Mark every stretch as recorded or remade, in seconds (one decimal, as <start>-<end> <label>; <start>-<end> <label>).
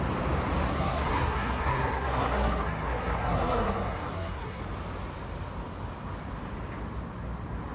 0.0-0.7 recorded; 0.7-4.6 remade; 4.6-7.7 recorded